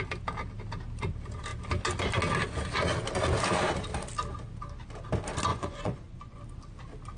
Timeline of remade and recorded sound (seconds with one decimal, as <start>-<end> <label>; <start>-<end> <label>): 0.0-5.5 recorded; 5.5-6.4 remade; 6.4-7.2 recorded